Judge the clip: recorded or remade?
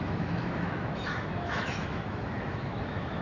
remade